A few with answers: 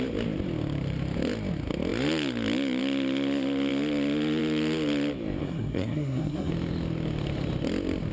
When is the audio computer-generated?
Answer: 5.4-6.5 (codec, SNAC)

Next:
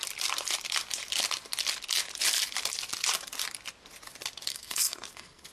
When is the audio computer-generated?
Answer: 4.5-5.5 (codec, SNAC)

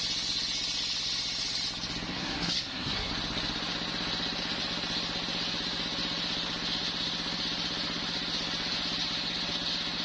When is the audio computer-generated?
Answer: 2.1-3.1 (codec, SNAC)

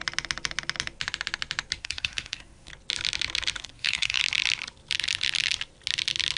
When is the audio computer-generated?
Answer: 1.8-2.7 (codec, SNAC); 3.6-4.2

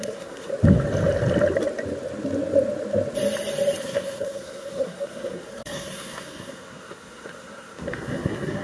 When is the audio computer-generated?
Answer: 0.0-0.5 (codec, SNAC); 3.8-8.6